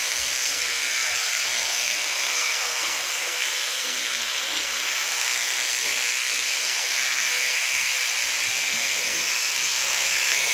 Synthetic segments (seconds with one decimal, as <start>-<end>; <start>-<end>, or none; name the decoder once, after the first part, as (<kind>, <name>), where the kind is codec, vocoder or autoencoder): 0.0-7.9 (codec, SNAC); 8.5-10.5